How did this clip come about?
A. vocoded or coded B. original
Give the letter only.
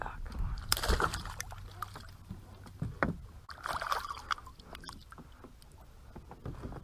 B